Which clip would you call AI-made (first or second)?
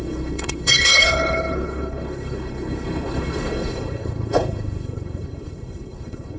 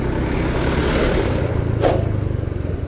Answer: first